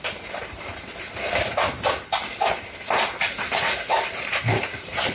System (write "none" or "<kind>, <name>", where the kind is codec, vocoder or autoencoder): vocoder, BigVGAN v2